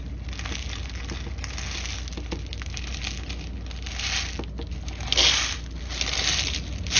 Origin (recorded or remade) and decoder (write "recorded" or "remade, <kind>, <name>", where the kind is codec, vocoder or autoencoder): recorded